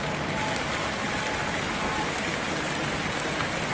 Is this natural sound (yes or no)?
yes